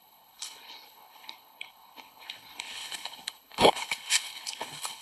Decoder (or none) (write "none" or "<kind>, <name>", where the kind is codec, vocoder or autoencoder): codec, HILCodec